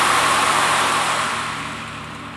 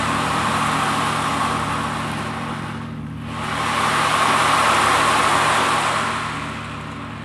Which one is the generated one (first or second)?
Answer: first